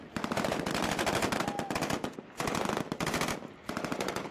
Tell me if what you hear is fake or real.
real